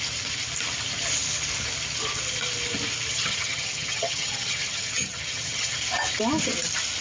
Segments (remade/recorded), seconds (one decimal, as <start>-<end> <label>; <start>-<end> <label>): 0.0-3.1 recorded; 3.1-5.8 remade; 5.8-7.0 recorded